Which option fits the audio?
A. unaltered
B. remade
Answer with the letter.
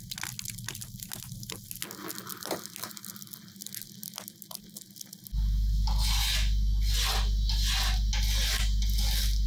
A